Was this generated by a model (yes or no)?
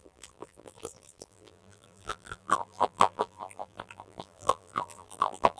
yes